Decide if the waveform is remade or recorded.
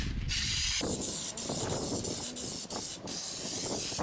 recorded